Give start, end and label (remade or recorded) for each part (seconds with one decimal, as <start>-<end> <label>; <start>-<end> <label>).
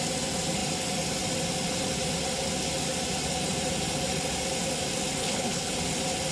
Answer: 0.0-5.2 recorded; 5.2-5.7 remade; 5.7-6.3 recorded